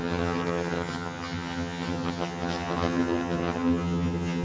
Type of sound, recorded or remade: remade